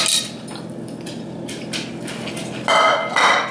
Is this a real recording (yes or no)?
yes